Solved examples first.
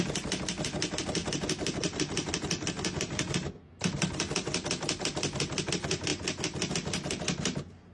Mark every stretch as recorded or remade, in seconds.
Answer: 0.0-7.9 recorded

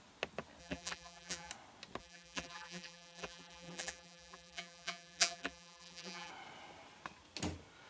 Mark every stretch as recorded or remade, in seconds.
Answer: 0.0-0.6 recorded; 0.6-1.5 remade; 1.5-2.0 recorded; 2.0-6.3 remade; 6.3-7.9 recorded

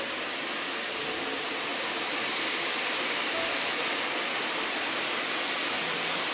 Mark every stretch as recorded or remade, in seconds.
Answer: 0.0-6.3 recorded

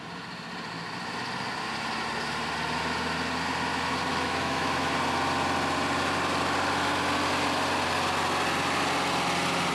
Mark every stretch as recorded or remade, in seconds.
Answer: 0.0-4.1 recorded; 4.1-4.9 remade; 4.9-9.7 recorded

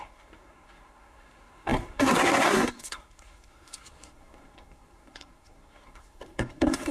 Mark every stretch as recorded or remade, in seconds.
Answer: 0.0-6.9 remade

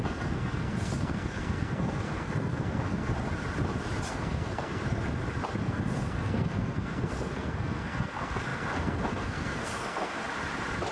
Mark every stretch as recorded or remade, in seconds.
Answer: 0.0-3.1 remade; 3.1-4.1 recorded; 4.1-4.8 remade; 4.8-5.6 recorded; 5.6-10.2 remade; 10.2-10.9 recorded

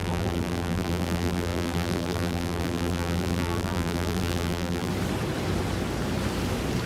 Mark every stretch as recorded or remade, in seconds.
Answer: 0.0-4.9 remade; 4.9-6.9 recorded